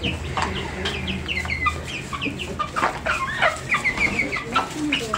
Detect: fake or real real